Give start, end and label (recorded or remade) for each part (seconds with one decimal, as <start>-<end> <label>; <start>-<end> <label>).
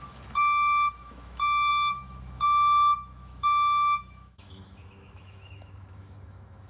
0.0-6.7 remade